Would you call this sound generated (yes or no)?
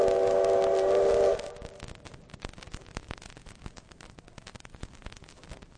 no